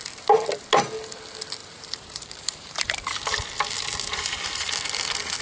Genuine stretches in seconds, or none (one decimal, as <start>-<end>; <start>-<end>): 0.0-1.6; 2.9-4.1; 4.7-5.4